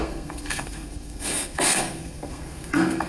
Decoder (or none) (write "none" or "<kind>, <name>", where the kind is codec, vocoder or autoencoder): codec, SNAC